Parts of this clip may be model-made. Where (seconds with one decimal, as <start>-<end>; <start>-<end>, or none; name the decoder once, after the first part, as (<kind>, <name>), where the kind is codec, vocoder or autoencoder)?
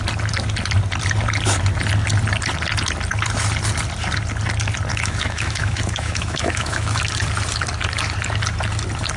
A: 4.9-7.0 (autoencoder, DAC-VAE)